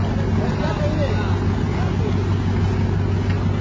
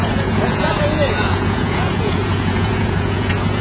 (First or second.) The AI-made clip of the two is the second